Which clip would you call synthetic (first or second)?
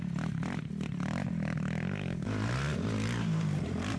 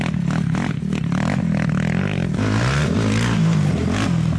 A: first